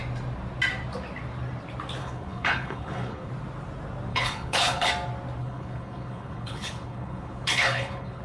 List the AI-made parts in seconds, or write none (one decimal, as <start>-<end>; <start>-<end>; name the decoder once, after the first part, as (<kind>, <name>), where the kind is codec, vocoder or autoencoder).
2.0-3.3 (codec, HILCodec); 4.1-4.9; 5.4-8.2